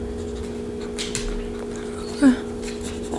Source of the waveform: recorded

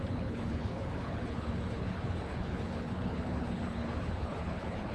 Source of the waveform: remade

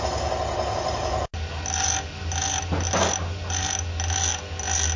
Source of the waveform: recorded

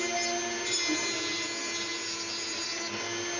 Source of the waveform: recorded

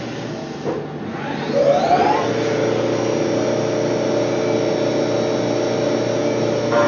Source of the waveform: recorded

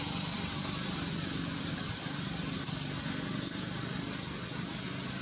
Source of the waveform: recorded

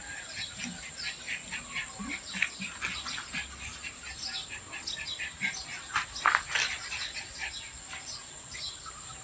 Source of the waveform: recorded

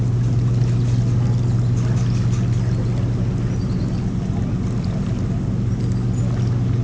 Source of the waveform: recorded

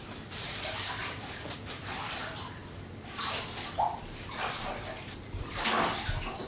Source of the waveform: recorded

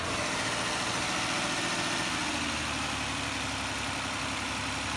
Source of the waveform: recorded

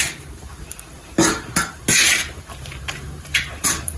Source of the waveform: remade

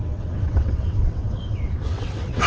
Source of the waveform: remade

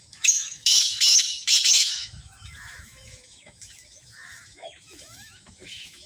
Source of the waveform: remade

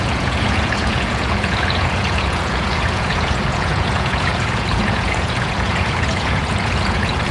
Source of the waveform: remade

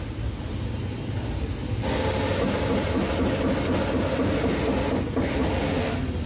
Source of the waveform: recorded